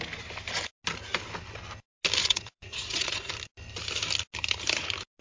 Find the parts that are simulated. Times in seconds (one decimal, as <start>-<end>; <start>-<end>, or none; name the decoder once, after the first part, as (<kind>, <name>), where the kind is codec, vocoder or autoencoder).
2.2-3.3 (vocoder, Vocos)